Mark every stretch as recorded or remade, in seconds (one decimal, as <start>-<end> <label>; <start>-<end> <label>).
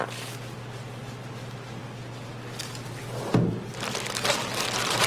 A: 0.0-5.1 recorded